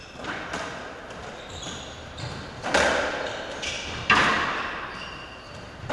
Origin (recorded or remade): recorded